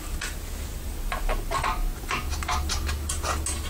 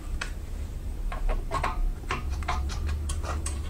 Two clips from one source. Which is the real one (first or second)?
first